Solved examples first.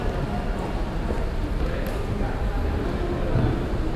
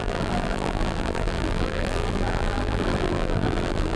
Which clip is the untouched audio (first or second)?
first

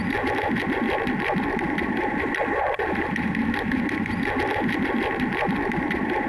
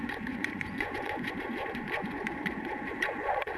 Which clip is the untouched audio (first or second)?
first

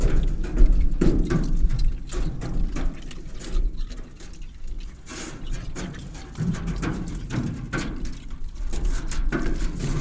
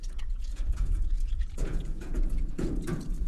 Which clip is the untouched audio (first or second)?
first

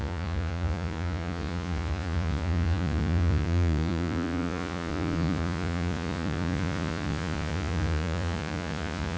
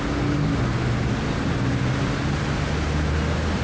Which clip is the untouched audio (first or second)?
second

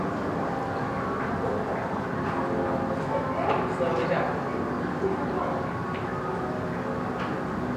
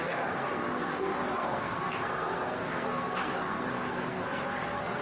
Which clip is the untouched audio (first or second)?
first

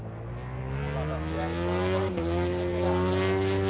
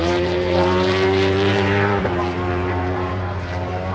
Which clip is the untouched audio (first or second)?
first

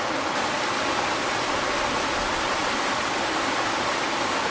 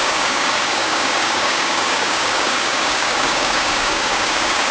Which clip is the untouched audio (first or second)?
first